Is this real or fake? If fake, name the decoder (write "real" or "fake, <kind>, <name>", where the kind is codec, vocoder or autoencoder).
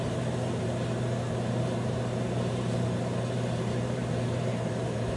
fake, vocoder, BigVGAN v2